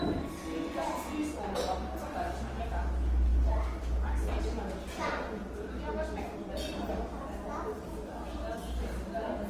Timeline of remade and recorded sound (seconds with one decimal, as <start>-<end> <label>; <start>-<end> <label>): 0.0-3.3 recorded; 3.3-4.4 remade; 4.4-5.4 recorded; 5.4-7.9 remade; 7.9-9.5 recorded